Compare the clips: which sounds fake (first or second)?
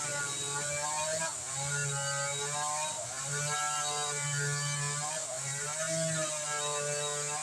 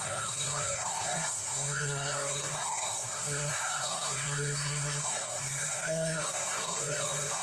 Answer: second